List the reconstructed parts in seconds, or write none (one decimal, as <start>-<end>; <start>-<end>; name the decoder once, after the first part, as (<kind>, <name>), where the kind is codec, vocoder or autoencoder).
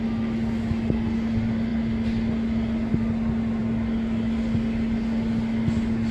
none